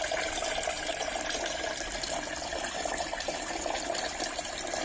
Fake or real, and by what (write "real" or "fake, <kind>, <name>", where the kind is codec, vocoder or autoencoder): fake, vocoder, BigVGAN v2